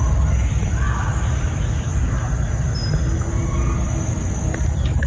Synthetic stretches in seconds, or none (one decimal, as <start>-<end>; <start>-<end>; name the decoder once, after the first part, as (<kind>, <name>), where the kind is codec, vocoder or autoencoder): none